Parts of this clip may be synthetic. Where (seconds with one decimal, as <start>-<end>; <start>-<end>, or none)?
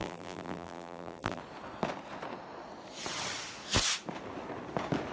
0.0-1.4